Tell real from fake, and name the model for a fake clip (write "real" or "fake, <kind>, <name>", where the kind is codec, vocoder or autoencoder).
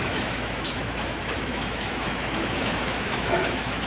fake, autoencoder, DAC-VAE